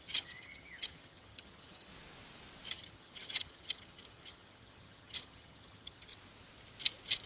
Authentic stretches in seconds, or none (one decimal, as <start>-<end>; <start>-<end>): 1.9-2.7; 6.1-7.3